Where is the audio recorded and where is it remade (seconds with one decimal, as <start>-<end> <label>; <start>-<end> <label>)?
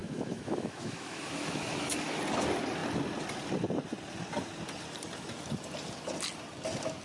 0.0-2.2 remade; 2.2-7.0 recorded